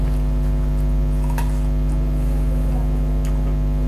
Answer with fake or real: real